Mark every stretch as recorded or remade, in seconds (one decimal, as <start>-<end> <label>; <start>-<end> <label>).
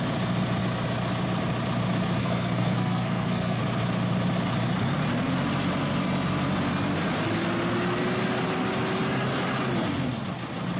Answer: 0.0-2.2 recorded; 2.2-3.6 remade; 3.6-10.8 recorded